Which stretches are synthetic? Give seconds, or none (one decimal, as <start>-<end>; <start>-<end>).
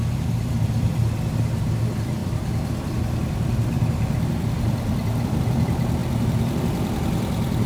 0.0-7.7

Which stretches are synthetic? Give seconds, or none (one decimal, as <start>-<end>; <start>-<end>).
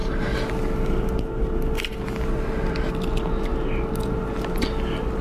none